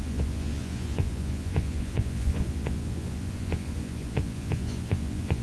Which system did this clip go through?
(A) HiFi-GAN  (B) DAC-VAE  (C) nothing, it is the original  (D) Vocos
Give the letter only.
D